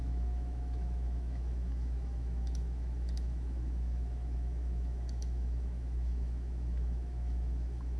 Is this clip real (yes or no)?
no